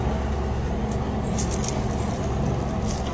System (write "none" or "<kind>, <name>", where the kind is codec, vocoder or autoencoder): none